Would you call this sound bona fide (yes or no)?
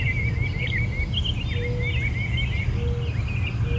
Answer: yes